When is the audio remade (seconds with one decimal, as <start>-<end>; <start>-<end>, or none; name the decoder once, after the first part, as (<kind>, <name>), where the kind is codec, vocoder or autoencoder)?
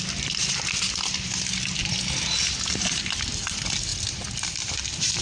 0.0-1.8 (vocoder, BigVGAN v2); 3.0-3.9; 4.4-5.2